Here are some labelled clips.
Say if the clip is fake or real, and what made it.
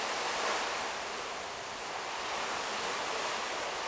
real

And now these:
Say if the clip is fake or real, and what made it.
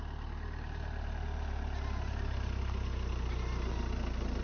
real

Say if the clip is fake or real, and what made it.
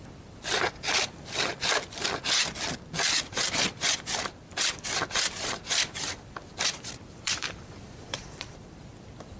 fake, vocoder, BigVGAN v2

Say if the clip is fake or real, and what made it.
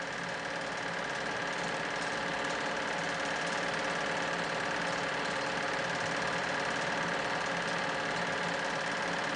real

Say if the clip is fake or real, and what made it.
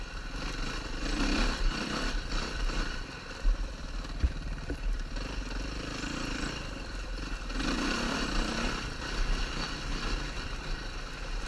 fake, vocoder, BigVGAN v2